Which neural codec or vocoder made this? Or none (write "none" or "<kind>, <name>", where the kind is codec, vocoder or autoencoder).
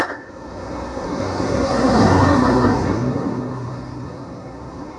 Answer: codec, SNAC